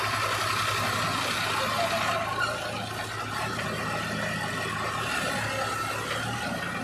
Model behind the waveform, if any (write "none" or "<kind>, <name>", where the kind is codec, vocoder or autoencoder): none